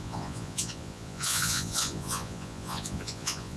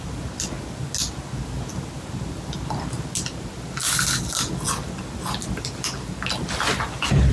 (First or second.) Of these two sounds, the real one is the second